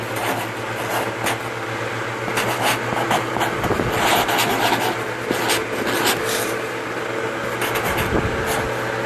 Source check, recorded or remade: recorded